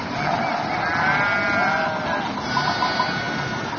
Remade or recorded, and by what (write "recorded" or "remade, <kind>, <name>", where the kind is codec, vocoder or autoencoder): recorded